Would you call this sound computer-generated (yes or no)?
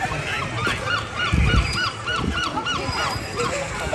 yes